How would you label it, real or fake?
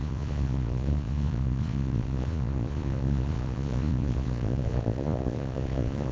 fake